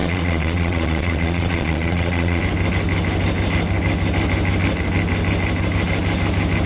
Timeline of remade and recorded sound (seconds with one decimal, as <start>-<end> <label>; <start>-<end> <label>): 0.0-2.4 remade; 2.4-6.7 recorded